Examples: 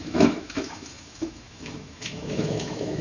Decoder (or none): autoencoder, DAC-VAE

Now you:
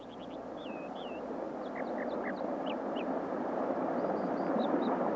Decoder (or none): none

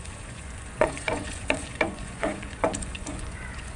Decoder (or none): vocoder, Vocos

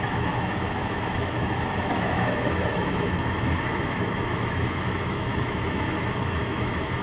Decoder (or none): autoencoder, DAC-VAE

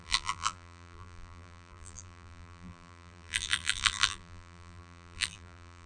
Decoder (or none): vocoder, BigVGAN v2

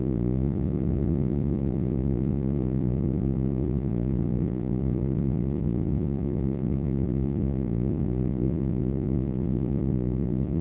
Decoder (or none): vocoder, Vocos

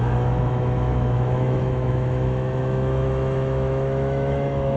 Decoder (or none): autoencoder, DAC-VAE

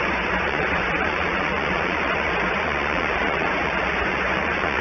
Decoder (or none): vocoder, Vocos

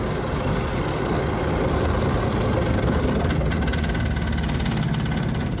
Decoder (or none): none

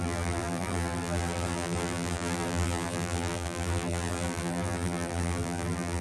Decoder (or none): vocoder, BigVGAN v2